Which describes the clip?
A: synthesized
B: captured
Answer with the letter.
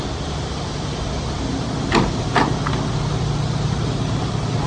B